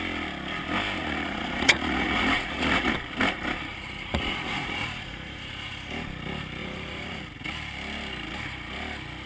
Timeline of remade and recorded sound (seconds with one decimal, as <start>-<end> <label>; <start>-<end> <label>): 0.0-1.0 recorded; 1.0-2.9 remade; 2.9-3.7 recorded; 3.7-5.9 remade; 5.9-6.6 recorded; 6.6-7.2 remade; 7.2-9.3 recorded